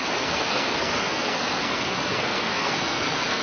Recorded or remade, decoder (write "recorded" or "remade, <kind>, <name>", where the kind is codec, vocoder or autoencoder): remade, codec, SNAC